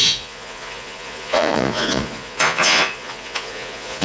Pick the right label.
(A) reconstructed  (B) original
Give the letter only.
A